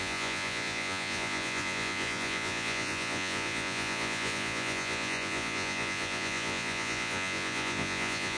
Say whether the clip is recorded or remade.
remade